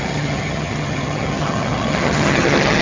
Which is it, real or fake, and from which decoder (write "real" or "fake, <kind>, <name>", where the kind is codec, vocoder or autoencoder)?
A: fake, vocoder, HiFi-GAN